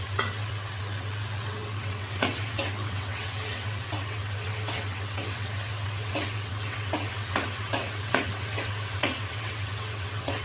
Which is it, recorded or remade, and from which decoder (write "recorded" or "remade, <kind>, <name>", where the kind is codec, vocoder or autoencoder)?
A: remade, vocoder, WaveNeXt